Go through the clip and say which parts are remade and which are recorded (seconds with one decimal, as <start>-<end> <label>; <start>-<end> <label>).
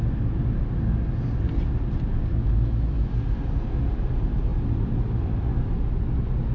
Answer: 0.0-2.3 recorded; 2.3-3.1 remade; 3.1-6.5 recorded